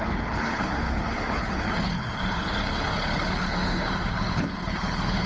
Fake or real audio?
fake